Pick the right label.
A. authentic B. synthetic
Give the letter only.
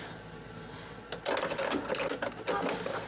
A